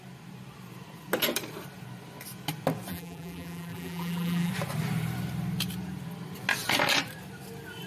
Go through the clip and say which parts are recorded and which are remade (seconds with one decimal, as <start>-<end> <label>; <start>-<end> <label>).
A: 0.0-2.9 recorded; 2.9-4.5 remade; 4.5-7.9 recorded